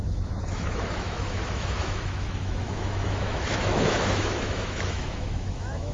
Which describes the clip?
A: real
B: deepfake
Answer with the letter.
B